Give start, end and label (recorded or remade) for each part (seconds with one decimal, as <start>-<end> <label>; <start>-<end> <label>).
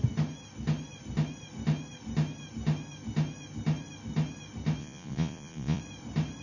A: 0.0-4.8 recorded; 4.8-5.8 remade; 5.8-6.4 recorded